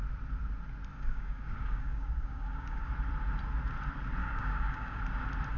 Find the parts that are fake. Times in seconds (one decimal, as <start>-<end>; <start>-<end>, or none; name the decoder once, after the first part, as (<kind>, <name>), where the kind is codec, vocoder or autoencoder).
0.9-2.9 (codec, DAC); 4.2-5.0